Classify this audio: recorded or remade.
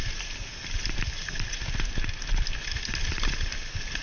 recorded